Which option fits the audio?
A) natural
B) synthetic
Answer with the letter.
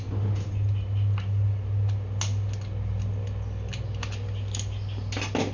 A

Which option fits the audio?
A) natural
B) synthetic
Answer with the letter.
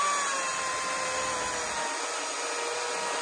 A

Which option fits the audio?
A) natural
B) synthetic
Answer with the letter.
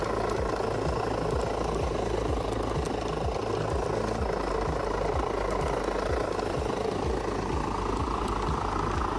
A